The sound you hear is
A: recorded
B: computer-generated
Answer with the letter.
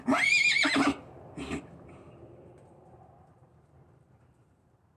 A